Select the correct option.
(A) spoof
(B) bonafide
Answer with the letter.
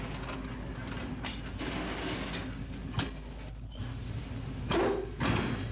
B